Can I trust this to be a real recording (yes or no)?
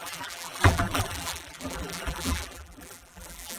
no